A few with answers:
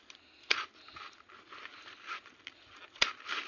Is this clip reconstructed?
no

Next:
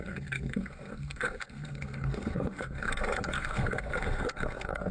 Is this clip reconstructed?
yes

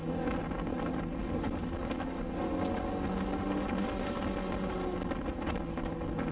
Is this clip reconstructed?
no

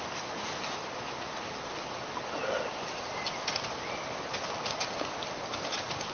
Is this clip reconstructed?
no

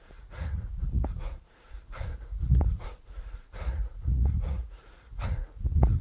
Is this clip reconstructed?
yes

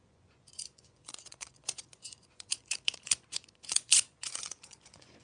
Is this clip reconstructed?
yes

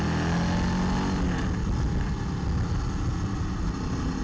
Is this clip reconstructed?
no